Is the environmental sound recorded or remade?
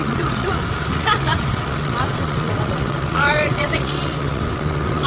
remade